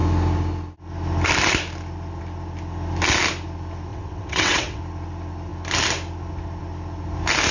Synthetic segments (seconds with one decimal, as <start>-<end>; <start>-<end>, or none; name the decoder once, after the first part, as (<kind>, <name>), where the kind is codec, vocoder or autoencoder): 3.9-4.8 (vocoder, WaveNeXt)